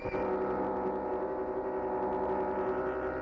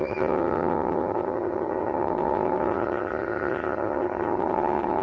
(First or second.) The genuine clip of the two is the first